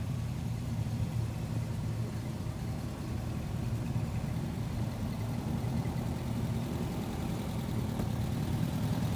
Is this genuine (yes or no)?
no